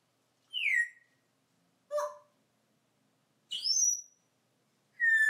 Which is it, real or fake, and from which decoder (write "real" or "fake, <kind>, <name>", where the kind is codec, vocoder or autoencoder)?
real